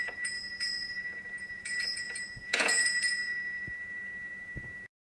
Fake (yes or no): yes